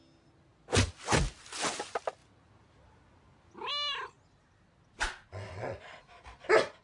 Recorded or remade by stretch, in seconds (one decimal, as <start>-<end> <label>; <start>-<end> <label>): 0.0-6.8 recorded